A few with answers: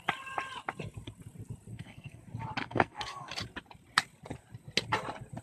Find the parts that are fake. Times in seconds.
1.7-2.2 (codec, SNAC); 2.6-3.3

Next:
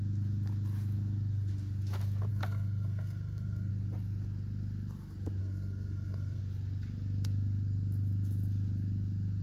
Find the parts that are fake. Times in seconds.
2.3-3.7 (codec, SNAC); 5.4-6.4

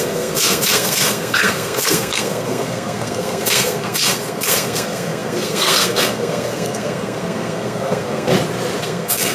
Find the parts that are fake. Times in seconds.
0.0-8.3 (codec, SNAC); 8.8-9.3

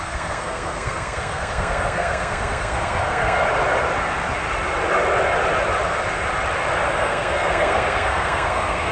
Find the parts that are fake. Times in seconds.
0.0-3.5 (codec, SNAC); 7.0-8.9

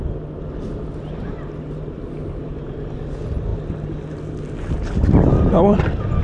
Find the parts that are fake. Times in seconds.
none

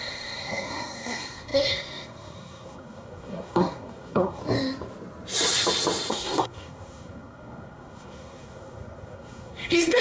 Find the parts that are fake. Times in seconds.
0.0-4.4 (codec, SNAC); 6.1-10.0

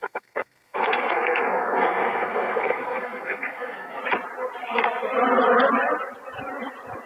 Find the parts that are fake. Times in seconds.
0.0-4.0 (codec, SNAC)